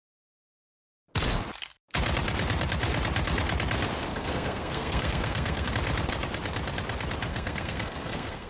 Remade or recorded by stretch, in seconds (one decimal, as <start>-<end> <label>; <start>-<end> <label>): 0.0-4.1 recorded; 4.1-5.7 remade; 5.7-7.3 recorded; 7.3-8.5 remade